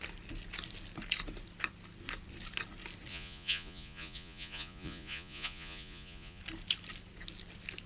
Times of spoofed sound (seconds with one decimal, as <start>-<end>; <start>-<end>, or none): 3.1-6.4